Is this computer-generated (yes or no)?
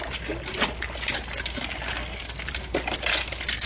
no